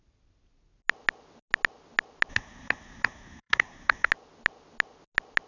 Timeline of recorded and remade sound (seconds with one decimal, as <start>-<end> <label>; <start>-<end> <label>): 0.0-2.3 recorded; 2.3-4.1 remade; 4.1-5.5 recorded